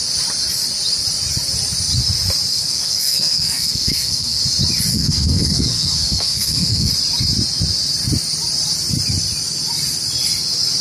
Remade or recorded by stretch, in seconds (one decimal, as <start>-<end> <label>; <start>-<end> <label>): 0.0-2.5 recorded; 2.5-4.4 remade; 4.4-4.9 recorded; 4.9-6.9 remade; 6.9-10.8 recorded